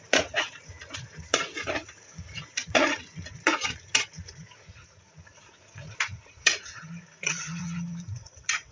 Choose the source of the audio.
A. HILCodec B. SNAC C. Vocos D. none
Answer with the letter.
C